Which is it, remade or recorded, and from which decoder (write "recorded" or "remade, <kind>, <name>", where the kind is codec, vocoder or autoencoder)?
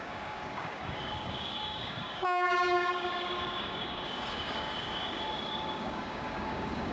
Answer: remade, codec, DAC